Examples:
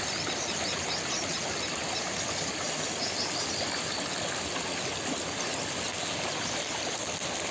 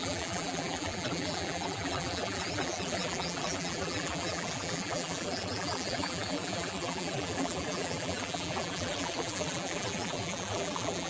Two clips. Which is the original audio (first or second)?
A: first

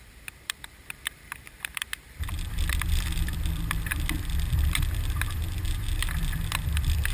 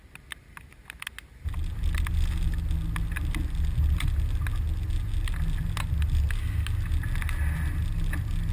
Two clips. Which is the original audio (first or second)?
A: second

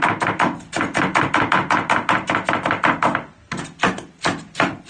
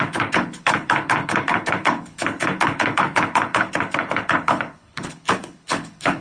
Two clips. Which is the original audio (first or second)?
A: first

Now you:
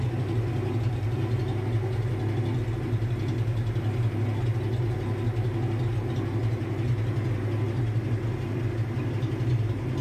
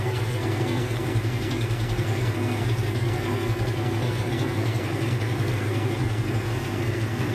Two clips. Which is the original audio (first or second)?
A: first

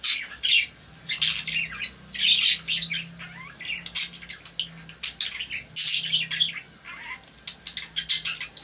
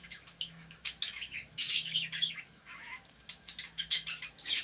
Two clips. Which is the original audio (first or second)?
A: first